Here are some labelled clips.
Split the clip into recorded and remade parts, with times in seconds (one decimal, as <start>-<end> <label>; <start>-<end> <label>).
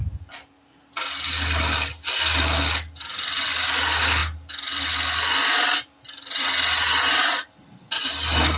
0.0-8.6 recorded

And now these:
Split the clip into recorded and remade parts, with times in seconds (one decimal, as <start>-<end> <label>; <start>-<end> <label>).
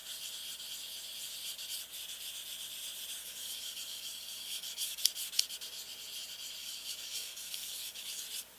0.0-3.2 recorded; 3.2-5.0 remade; 5.0-6.6 recorded; 6.6-8.2 remade; 8.2-8.6 recorded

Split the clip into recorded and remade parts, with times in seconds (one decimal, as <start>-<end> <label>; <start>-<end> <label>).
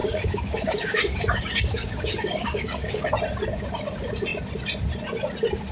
0.0-3.1 remade; 3.1-5.7 recorded